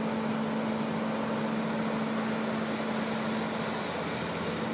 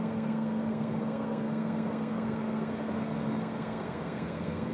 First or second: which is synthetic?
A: second